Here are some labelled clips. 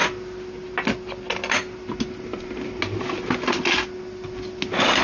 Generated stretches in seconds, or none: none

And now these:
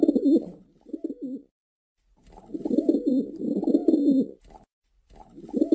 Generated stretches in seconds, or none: none

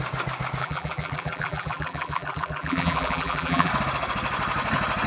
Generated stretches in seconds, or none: 0.6-3.7 (vocoder, BigVGAN v2)

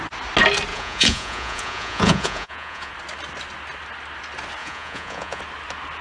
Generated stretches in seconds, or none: 0.7-2.9 (vocoder, Vocos); 4.6-5.4